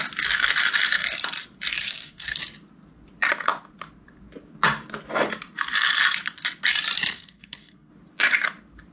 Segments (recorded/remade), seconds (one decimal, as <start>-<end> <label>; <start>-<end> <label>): 0.0-1.8 recorded; 1.8-2.4 remade; 2.4-7.1 recorded; 7.1-7.9 remade; 7.9-8.9 recorded